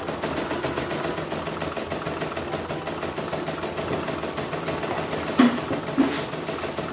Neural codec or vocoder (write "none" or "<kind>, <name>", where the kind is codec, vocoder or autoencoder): none